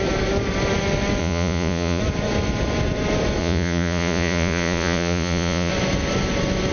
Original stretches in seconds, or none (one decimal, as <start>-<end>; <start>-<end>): 0.0-1.2; 2.0-3.4; 5.7-6.7